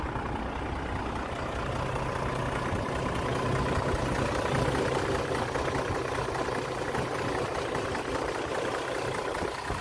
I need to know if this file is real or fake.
real